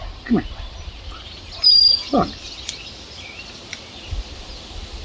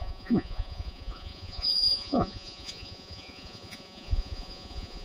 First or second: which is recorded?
first